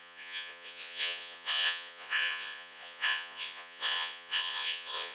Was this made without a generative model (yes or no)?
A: no